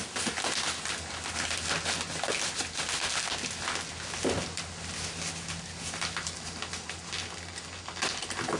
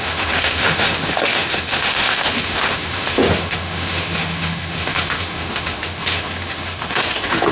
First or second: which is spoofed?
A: second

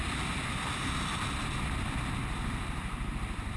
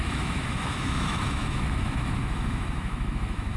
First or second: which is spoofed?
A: second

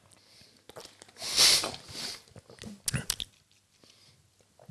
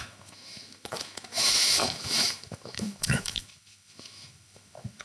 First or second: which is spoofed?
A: second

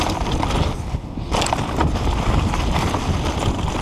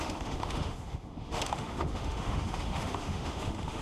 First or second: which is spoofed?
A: second